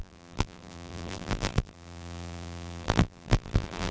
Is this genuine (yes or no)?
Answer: no